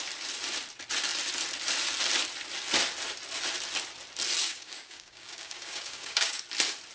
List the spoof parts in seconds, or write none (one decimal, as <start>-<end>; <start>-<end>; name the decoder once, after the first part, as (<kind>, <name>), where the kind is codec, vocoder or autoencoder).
4.4-6.4 (codec, DAC)